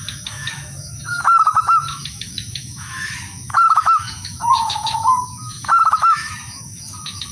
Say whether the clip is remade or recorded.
remade